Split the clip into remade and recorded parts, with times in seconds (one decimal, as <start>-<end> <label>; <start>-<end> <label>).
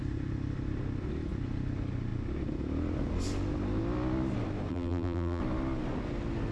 0.0-4.7 recorded; 4.7-5.4 remade; 5.4-6.5 recorded